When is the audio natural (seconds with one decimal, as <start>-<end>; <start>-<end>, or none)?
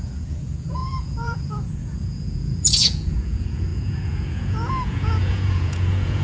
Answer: none